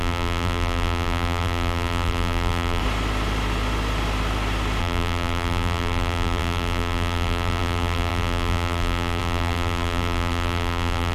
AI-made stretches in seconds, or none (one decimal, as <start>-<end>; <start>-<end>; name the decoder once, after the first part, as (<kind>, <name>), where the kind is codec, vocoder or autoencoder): 0.0-2.8 (vocoder, BigVGAN v2); 4.8-11.1

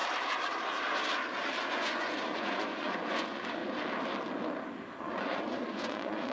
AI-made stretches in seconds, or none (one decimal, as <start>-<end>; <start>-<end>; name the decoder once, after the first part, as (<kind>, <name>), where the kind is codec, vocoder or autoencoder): 1.7-3.6 (vocoder, Vocos); 5.0-6.3

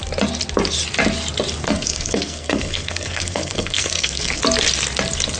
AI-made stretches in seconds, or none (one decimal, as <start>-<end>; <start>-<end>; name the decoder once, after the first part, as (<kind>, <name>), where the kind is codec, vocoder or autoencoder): 1.6-4.4 (codec, SNAC)

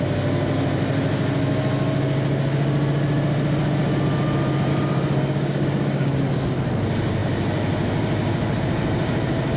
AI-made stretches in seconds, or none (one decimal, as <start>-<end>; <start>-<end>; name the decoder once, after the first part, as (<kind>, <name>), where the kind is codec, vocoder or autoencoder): 4.7-6.2 (codec, DAC)

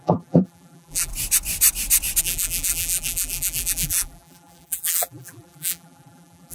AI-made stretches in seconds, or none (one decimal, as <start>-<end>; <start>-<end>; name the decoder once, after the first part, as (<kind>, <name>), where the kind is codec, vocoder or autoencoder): 0.0-1.1 (vocoder, BigVGAN v2); 2.2-6.5